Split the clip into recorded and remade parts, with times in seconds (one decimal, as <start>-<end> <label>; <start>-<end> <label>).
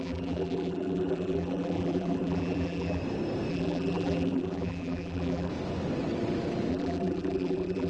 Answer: 0.0-3.0 remade; 3.0-3.5 recorded; 3.5-5.5 remade; 5.5-6.7 recorded; 6.7-7.9 remade